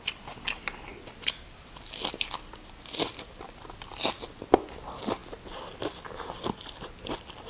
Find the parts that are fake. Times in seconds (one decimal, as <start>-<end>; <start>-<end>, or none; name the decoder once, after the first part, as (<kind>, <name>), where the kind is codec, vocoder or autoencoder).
none